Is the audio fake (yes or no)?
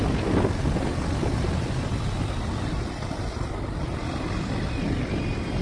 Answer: yes